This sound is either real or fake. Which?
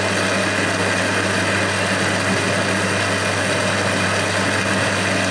real